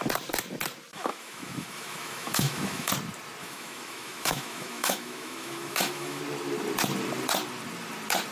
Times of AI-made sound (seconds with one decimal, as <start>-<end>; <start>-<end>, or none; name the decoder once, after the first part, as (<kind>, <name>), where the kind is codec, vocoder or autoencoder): 0.9-2.9 (autoencoder, DAC-VAE); 3.4-6.2